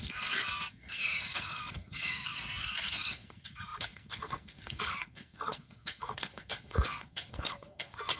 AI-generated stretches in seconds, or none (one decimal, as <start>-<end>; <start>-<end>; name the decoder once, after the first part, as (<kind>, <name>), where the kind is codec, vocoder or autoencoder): 0.0-8.2 (codec, SNAC)